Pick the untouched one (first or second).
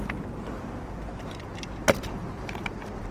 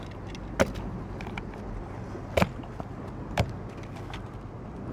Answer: second